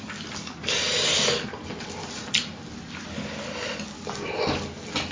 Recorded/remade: recorded